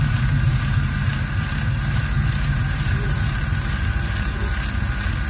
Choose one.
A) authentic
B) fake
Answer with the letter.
B